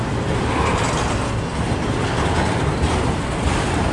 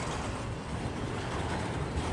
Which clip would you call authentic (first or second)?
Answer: first